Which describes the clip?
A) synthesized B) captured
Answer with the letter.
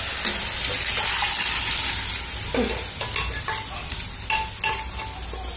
B